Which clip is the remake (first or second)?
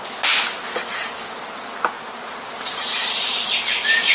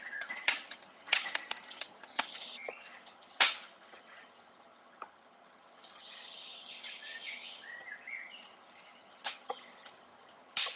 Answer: second